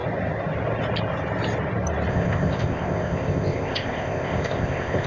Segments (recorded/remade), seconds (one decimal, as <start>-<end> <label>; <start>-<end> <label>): 0.0-2.1 recorded; 2.1-5.1 remade